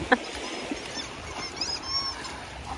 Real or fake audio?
real